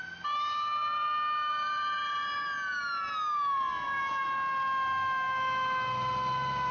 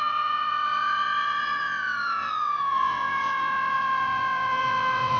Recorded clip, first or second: first